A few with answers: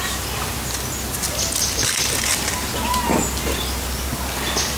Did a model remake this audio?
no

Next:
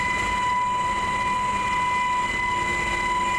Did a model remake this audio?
no